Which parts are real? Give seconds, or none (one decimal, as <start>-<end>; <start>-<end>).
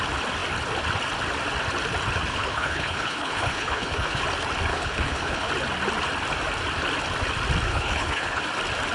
0.0-2.3; 4.2-4.7; 5.5-7.7; 8.4-8.9